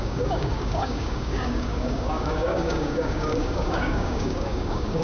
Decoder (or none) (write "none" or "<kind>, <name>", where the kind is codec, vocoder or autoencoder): codec, DAC